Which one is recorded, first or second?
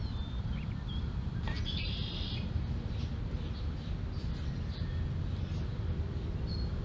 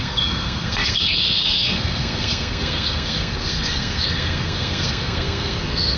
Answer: first